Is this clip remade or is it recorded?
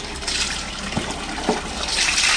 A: recorded